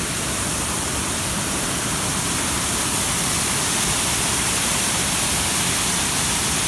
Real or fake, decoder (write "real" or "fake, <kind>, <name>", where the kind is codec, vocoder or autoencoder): real